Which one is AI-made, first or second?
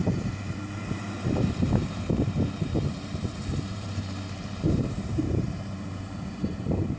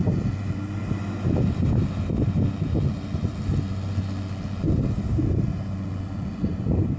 first